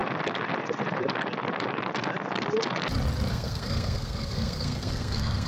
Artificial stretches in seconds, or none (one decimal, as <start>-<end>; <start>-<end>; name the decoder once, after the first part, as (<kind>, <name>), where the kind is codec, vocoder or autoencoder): 3.3-5.5 (codec, SNAC)